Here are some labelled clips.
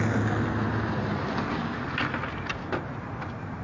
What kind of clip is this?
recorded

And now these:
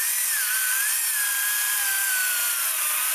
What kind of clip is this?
recorded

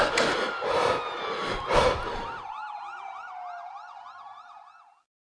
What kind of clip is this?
recorded